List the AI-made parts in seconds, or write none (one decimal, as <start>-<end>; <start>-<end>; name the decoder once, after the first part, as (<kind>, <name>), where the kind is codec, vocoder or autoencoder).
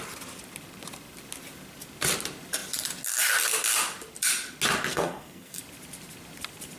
4.9-5.6 (codec, SNAC)